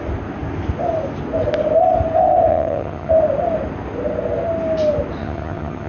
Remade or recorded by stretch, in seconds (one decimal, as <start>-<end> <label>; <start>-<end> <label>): 0.0-2.5 recorded; 2.5-3.1 remade; 3.1-5.2 recorded; 5.2-5.9 remade